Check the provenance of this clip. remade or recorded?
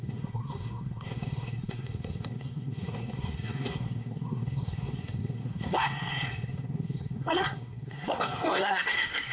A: remade